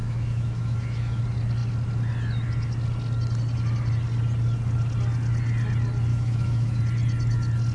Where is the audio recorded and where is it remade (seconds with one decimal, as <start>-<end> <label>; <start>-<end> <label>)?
0.0-1.2 remade; 1.2-6.1 recorded; 6.1-6.8 remade; 6.8-7.7 recorded